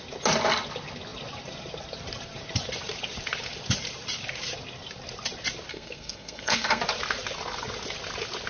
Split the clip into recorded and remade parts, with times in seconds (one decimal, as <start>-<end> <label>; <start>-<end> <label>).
0.0-5.7 recorded; 5.7-6.8 remade; 6.8-8.5 recorded